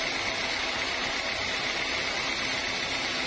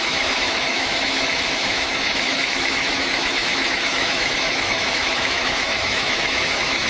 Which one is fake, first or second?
second